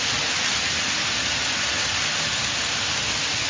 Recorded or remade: recorded